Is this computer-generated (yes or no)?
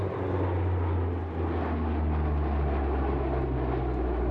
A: no